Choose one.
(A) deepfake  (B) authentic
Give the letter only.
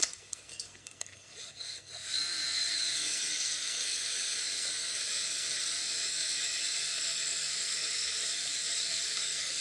A